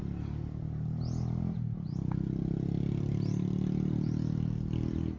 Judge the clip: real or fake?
real